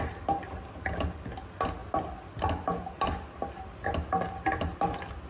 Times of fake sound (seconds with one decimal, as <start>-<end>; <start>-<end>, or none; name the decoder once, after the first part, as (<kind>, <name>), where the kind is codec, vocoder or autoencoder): none